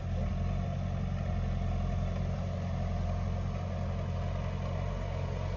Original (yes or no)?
yes